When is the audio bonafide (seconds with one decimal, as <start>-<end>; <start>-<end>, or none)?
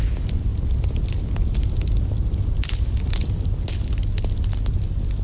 0.0-5.2